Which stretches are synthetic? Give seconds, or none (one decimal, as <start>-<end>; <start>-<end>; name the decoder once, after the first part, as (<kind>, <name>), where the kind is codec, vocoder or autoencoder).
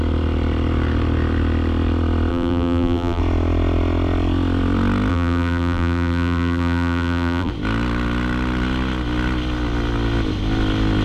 2.3-3.2 (vocoder, BigVGAN v2); 5.1-7.5